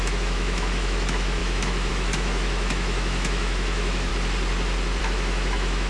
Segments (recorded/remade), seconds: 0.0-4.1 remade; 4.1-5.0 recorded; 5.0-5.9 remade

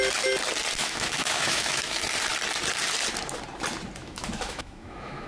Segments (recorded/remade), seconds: 0.0-0.8 recorded; 0.8-2.0 remade; 2.0-4.0 recorded; 4.0-5.3 remade

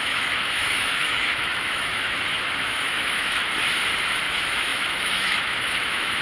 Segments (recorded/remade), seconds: 0.0-3.4 remade; 3.4-4.3 recorded; 4.3-6.2 remade

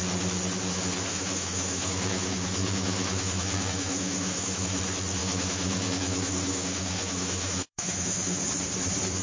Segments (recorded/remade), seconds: 0.0-1.1 recorded; 1.1-4.8 remade; 4.8-5.2 recorded; 5.2-8.4 remade; 8.4-9.2 recorded

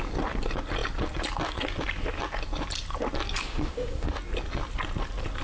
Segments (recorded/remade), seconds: 0.0-3.4 recorded; 3.4-4.1 remade; 4.1-5.4 recorded

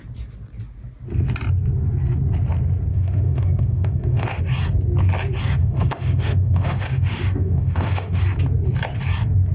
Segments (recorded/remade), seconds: 0.0-2.9 recorded; 2.9-4.4 remade; 4.4-5.6 recorded; 5.6-8.2 remade; 8.2-9.5 recorded

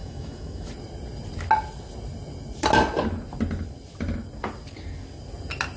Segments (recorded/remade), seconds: 0.0-0.7 remade; 0.7-5.8 recorded

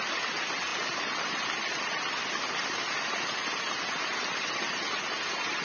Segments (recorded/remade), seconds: 0.0-5.6 recorded